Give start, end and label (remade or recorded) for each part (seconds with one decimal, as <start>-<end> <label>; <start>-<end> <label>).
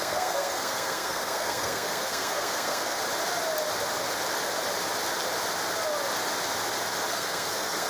0.0-3.0 remade; 3.0-7.1 recorded; 7.1-7.9 remade